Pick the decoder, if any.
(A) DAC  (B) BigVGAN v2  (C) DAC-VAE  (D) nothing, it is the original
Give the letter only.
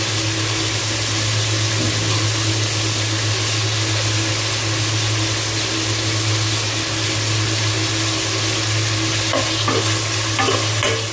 D